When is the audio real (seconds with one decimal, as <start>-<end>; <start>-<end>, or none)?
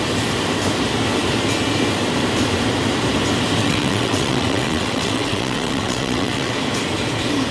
0.0-3.6; 6.5-7.5